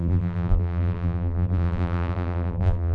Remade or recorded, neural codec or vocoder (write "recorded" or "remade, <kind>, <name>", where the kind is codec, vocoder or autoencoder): remade, vocoder, BigVGAN v2